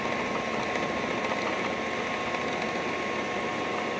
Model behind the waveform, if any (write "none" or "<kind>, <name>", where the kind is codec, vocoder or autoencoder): none